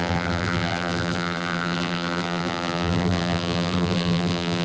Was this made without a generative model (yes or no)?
no